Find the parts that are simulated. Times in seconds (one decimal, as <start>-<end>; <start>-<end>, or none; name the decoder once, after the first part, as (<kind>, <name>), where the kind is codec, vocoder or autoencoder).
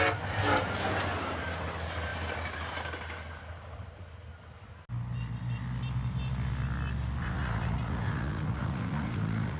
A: 7.2-9.6 (vocoder, Vocos)